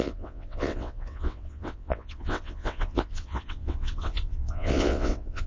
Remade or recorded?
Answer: remade